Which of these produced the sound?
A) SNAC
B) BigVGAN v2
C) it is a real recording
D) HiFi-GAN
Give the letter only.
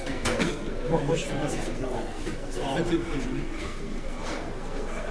A